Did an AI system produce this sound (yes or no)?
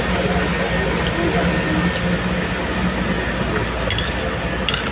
no